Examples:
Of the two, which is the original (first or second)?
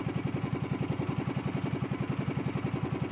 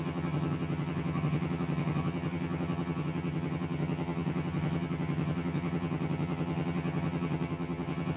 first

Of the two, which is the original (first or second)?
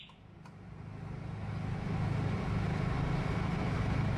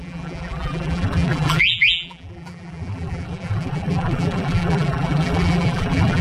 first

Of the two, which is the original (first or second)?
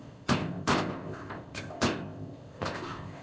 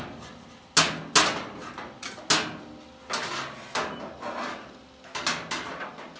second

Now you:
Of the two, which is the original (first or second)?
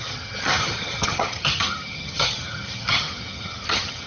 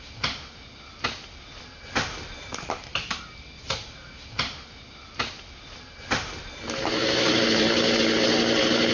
second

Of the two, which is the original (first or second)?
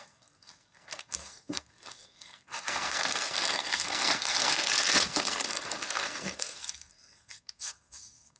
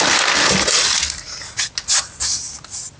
second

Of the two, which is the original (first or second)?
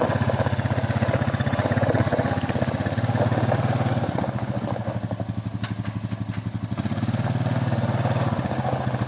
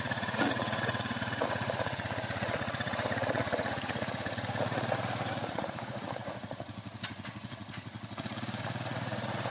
first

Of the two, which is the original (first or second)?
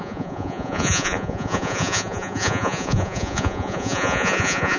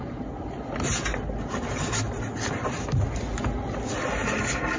second